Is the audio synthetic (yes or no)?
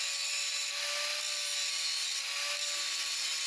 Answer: no